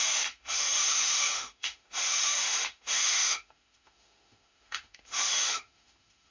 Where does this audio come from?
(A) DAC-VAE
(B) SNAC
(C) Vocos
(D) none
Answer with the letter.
A